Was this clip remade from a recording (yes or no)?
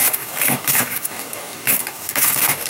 yes